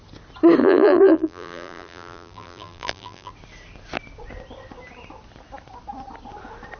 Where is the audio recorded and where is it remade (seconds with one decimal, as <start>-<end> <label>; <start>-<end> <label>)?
0.0-0.6 recorded; 0.6-3.3 remade; 3.3-6.8 recorded

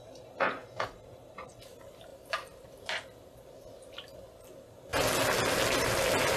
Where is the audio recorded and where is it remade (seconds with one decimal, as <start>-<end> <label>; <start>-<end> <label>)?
0.0-0.6 recorded; 0.6-1.5 remade; 1.5-2.1 recorded; 2.1-3.5 remade; 3.5-6.4 recorded

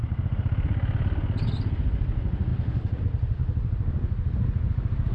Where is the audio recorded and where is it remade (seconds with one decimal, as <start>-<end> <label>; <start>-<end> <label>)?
0.0-2.5 recorded; 2.5-3.0 remade; 3.0-5.1 recorded

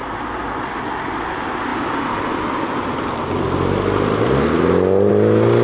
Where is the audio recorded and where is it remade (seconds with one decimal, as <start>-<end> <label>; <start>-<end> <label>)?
0.0-5.6 recorded

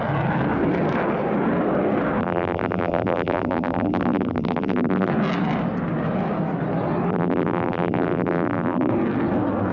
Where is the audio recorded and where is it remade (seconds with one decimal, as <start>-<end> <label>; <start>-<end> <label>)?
0.0-2.2 recorded; 2.2-5.1 remade; 5.1-7.1 recorded; 7.1-8.9 remade; 8.9-9.7 recorded